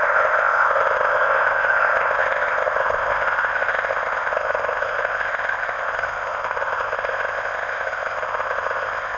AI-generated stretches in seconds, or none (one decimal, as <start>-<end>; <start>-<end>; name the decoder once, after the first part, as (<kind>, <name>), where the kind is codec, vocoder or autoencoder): 0.0-9.2 (codec, ZipCodec)